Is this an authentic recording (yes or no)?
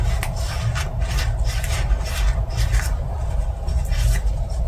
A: yes